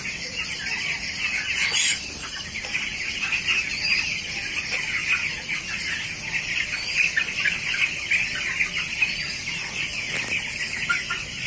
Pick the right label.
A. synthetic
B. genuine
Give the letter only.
B